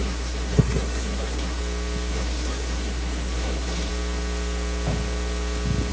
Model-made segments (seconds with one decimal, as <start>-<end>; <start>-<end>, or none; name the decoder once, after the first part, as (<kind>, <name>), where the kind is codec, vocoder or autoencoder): 0.0-1.6 (codec, SNAC); 2.1-3.9